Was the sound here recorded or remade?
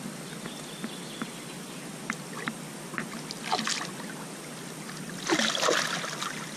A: recorded